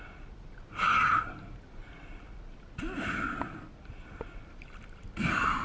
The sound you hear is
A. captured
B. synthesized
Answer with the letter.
A